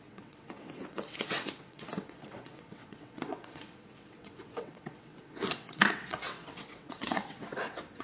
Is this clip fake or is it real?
fake